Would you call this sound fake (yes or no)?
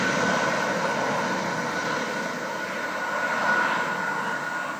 no